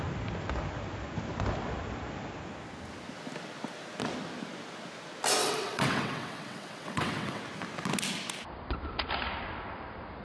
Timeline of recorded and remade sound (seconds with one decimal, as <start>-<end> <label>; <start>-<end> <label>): 0.0-5.4 recorded; 5.4-7.4 remade; 7.4-10.2 recorded